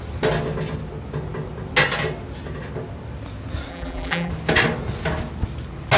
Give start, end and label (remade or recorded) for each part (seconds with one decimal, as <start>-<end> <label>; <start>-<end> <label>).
0.0-3.7 recorded; 3.7-4.3 remade; 4.3-6.0 recorded

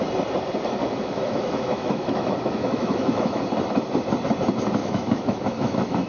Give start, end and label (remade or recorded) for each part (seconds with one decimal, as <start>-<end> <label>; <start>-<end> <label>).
0.0-0.8 recorded; 0.8-3.4 remade; 3.4-4.8 recorded; 4.8-6.1 remade

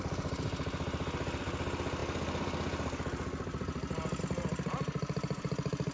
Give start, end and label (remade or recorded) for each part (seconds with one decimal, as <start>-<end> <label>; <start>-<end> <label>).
0.0-5.9 recorded

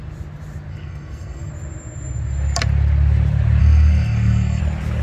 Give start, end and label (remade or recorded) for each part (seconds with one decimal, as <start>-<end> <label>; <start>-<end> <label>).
0.0-0.7 recorded; 0.7-1.5 remade; 1.5-3.6 recorded; 3.6-4.6 remade; 4.6-5.0 recorded

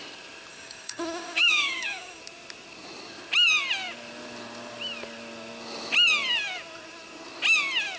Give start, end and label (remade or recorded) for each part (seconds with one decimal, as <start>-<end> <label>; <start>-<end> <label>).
0.0-0.5 recorded; 0.5-2.2 remade; 2.2-8.0 recorded

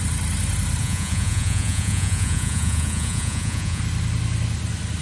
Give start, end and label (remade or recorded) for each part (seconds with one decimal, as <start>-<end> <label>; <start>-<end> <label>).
0.0-0.8 recorded; 0.8-3.8 remade; 3.8-5.0 recorded

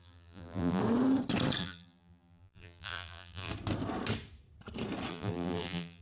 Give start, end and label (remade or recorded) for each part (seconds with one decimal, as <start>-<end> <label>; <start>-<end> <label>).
0.0-0.8 remade; 0.8-1.6 recorded; 1.6-3.5 remade; 3.5-5.1 recorded; 5.1-6.0 remade